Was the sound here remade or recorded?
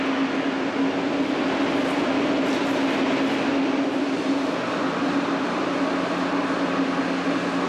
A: recorded